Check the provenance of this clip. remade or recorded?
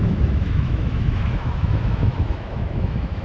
remade